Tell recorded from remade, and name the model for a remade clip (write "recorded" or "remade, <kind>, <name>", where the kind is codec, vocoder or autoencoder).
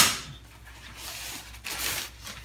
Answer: recorded